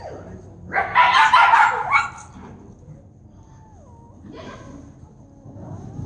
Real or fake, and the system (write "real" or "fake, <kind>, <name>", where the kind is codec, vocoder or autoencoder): real